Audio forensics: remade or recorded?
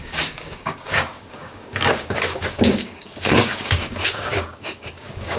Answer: remade